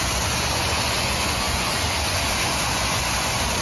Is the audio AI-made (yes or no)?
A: yes